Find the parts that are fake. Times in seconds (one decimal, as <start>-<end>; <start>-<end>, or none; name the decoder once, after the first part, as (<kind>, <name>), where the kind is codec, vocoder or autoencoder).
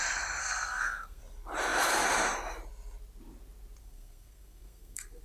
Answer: 0.4-1.2 (codec, SNAC); 3.8-5.2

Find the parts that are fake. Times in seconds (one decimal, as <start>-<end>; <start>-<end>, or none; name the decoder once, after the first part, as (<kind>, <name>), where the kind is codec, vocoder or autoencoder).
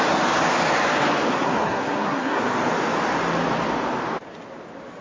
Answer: 1.3-2.4 (codec, SNAC)